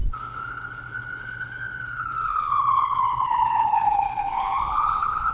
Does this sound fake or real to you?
fake